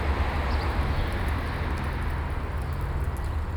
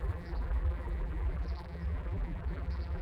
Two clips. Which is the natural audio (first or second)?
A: first